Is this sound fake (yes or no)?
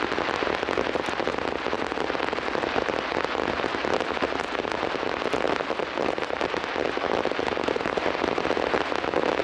no